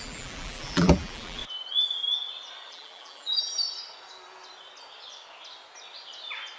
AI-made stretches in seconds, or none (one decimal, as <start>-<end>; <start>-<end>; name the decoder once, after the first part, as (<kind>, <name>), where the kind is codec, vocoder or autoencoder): 0.0-1.4 (vocoder, BigVGAN v2); 2.7-3.6